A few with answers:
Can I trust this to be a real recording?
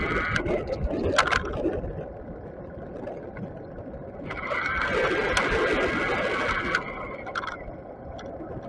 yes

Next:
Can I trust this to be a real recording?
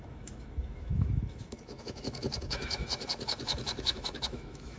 no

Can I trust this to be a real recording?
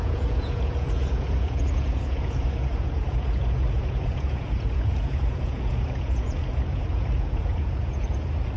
no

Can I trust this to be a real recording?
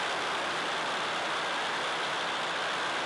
yes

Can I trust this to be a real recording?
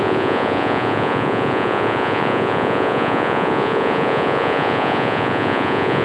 no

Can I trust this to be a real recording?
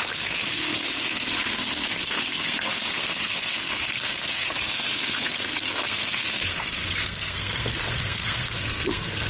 no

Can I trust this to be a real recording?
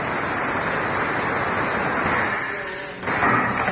yes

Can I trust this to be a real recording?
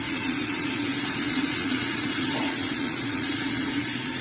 no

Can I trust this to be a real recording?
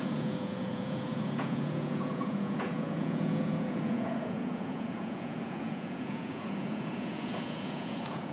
no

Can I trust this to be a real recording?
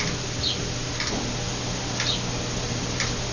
yes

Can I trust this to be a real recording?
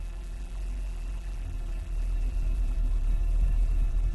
no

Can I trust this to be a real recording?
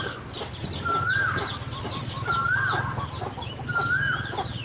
yes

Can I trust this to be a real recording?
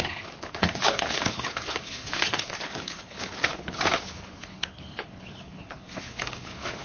no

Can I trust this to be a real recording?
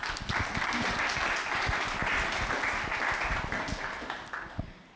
yes